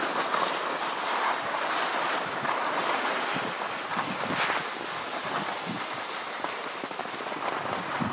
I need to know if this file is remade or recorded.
recorded